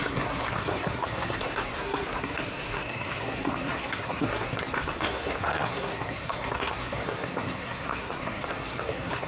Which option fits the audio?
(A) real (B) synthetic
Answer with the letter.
B